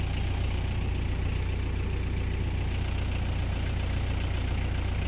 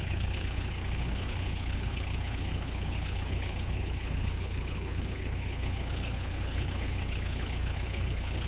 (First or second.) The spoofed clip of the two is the second